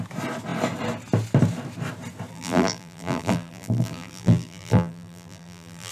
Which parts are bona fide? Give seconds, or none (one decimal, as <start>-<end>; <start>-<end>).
0.0-2.3